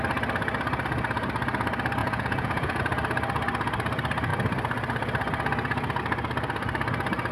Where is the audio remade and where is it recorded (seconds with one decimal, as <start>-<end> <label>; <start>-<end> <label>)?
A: 0.0-2.0 recorded; 2.0-2.8 remade; 2.8-7.3 recorded

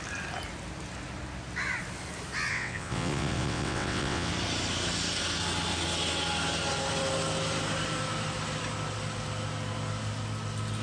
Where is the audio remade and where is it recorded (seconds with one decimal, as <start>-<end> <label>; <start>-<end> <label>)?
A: 0.0-2.5 recorded; 2.5-4.3 remade; 4.3-10.8 recorded

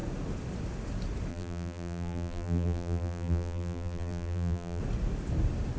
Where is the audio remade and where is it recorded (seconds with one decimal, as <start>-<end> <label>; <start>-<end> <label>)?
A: 0.0-1.3 recorded; 1.3-4.8 remade; 4.8-5.8 recorded

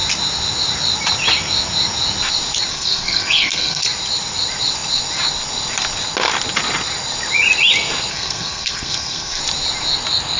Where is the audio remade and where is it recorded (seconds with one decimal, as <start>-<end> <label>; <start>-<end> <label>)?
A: 0.0-2.7 recorded; 2.7-3.8 remade; 3.8-8.1 recorded; 8.1-9.4 remade; 9.4-10.4 recorded